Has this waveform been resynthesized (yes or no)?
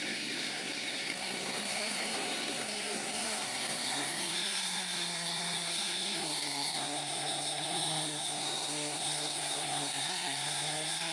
yes